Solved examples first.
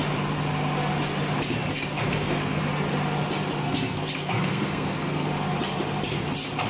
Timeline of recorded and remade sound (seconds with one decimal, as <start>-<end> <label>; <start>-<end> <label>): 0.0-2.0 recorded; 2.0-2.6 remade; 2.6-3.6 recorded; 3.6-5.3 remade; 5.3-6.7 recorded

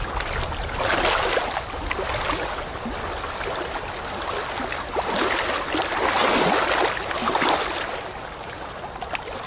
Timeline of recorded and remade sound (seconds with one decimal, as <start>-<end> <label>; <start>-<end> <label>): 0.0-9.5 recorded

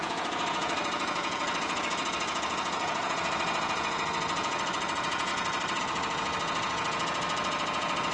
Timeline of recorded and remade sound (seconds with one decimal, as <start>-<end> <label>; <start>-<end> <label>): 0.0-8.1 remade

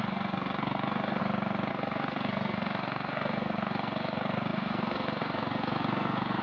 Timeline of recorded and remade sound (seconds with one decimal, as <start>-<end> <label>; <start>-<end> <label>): 0.0-1.2 remade; 1.2-1.7 recorded; 1.7-6.4 remade